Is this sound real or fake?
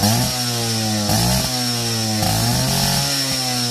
real